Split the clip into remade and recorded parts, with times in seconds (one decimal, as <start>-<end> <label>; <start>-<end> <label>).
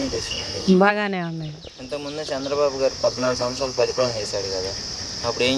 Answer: 0.0-0.9 remade; 0.9-3.0 recorded; 3.0-4.2 remade; 4.2-5.6 recorded